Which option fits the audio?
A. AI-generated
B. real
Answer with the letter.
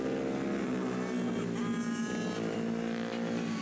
B